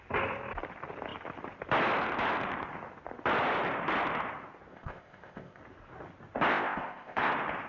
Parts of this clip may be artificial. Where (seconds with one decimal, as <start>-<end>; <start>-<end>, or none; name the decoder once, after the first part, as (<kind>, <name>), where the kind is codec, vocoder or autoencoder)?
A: 4.7-5.6 (codec, ZipCodec); 6.5-7.3